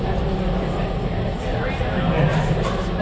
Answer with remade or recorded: recorded